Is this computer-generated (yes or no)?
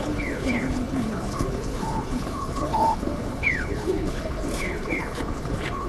yes